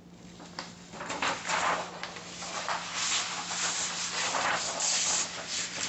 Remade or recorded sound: recorded